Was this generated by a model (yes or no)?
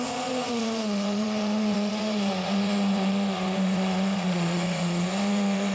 yes